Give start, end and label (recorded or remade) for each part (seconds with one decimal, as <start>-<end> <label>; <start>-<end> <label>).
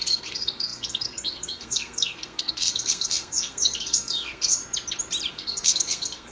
0.0-4.6 remade; 4.6-5.3 recorded; 5.3-6.3 remade